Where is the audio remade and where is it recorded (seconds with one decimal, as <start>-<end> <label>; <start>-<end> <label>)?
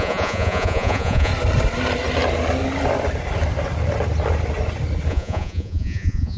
0.0-1.3 remade; 1.3-5.1 recorded; 5.1-6.4 remade